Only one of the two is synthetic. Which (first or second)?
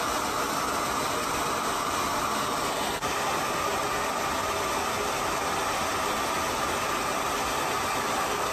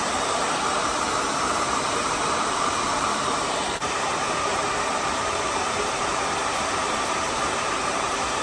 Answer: second